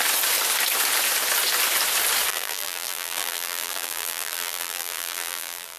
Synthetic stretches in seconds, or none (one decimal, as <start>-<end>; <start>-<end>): 2.3-5.8

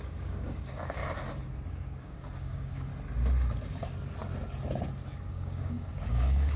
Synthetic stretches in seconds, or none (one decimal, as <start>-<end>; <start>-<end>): 0.0-1.0; 1.7-2.9; 5.3-6.6

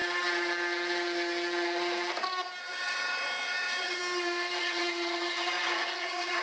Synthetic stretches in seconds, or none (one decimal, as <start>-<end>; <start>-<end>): 2.6-4.0; 4.6-6.4